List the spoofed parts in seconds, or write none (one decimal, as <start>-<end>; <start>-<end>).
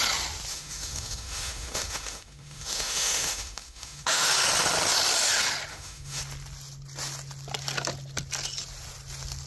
0.5-4.3; 5.7-6.2